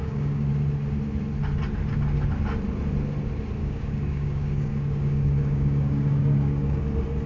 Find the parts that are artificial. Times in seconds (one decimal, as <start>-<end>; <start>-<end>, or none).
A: 0.0-0.5; 3.6-6.8